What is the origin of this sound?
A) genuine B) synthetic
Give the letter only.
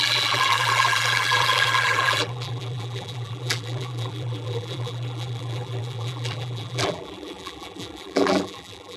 B